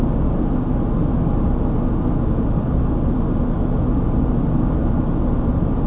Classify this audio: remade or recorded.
recorded